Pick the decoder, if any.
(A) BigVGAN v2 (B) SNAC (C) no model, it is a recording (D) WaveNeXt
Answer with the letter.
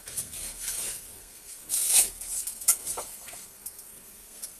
B